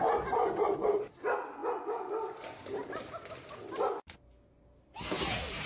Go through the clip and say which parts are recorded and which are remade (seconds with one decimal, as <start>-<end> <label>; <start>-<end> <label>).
0.0-5.7 recorded